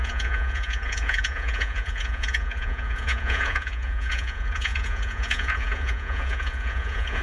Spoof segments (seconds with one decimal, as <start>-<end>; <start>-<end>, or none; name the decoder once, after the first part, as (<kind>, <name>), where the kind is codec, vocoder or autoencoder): 0.0-7.2 (vocoder, Vocos)